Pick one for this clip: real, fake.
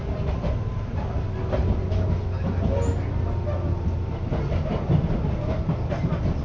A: real